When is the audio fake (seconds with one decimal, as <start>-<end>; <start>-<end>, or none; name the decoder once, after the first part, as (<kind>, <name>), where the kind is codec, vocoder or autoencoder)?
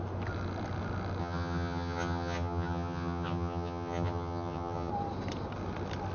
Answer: 1.2-4.9 (vocoder, HiFi-GAN)